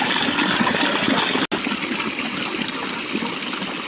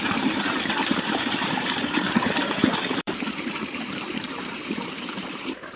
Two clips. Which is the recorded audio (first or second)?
first